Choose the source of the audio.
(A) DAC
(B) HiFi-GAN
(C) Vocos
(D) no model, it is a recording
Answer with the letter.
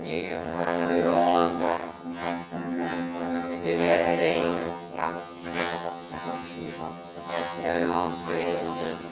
B